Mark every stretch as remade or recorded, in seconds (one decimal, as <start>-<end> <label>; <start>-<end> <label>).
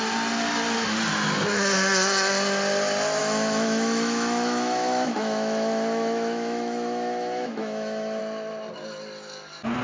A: 0.0-3.2 recorded; 3.2-8.2 remade; 8.2-9.8 recorded